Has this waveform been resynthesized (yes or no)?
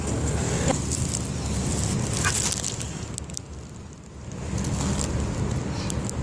no